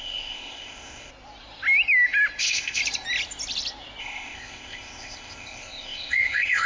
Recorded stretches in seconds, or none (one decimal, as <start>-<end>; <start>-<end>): 1.1-2.4; 2.8-4.0